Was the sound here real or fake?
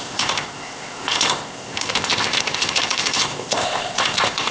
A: fake